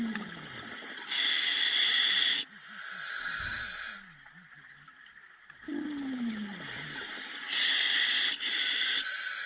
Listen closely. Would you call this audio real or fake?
real